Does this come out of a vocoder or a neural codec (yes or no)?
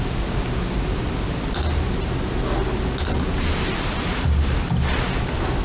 no